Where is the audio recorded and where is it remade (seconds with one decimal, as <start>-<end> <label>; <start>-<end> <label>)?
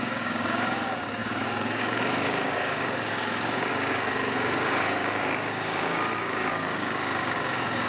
0.0-7.9 remade